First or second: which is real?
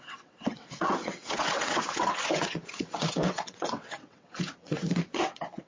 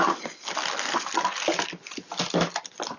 second